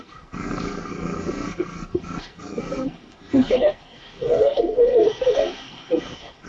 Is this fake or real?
fake